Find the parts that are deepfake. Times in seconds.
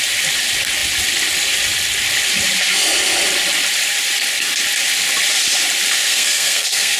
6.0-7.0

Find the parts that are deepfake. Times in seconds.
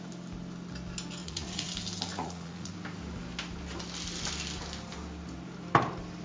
1.2-1.7; 2.1-2.7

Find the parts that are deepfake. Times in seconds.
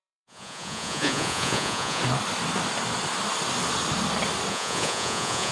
0.0-2.0; 4.5-5.5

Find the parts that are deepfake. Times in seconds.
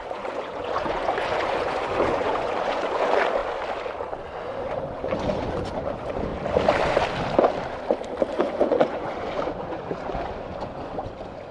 0.0-3.4; 4.6-6.3; 8.3-11.5